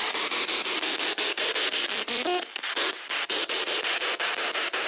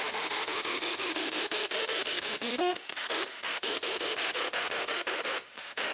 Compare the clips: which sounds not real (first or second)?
second